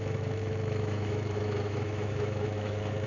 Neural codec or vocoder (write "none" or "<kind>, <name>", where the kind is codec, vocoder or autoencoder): autoencoder, DAC-VAE